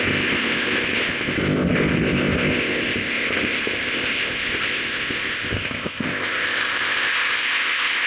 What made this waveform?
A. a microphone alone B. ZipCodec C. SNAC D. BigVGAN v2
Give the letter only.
B